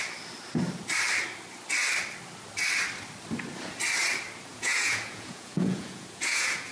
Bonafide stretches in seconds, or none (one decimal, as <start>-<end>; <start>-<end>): 0.0-4.5